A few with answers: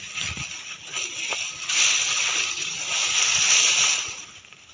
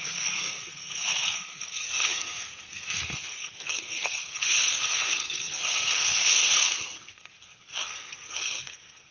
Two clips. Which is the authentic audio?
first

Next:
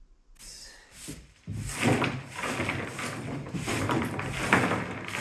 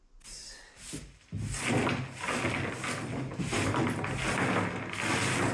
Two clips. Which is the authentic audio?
second